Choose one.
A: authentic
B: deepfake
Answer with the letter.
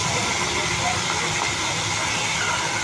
A